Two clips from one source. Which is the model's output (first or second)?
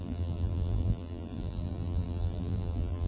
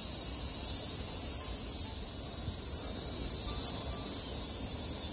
first